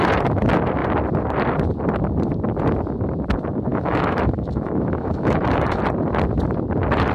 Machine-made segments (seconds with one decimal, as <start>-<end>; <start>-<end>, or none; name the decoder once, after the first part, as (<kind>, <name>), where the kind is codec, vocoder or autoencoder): 3.7-5.8 (autoencoder, DAC-VAE)

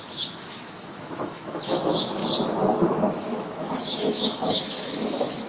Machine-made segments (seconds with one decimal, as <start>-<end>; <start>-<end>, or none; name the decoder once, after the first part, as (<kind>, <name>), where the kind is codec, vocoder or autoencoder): 0.0-2.2 (autoencoder, DAC-VAE); 2.9-5.5